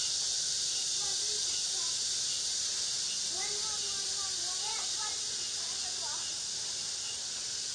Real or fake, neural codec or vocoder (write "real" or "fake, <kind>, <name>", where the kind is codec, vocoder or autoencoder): real